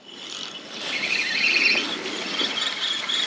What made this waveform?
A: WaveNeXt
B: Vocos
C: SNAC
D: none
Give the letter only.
D